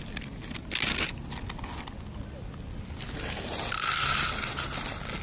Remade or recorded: recorded